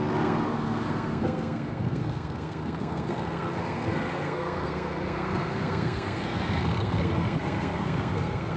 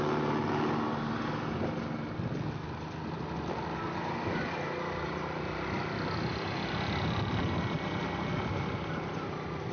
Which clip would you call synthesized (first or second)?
first